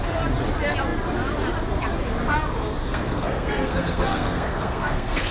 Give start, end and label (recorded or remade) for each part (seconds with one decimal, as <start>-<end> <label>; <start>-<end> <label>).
0.0-2.8 recorded; 2.8-5.3 remade